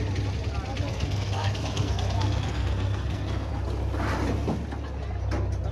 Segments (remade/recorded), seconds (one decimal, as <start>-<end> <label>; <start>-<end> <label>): 0.0-0.9 recorded; 0.9-3.5 remade; 3.5-5.7 recorded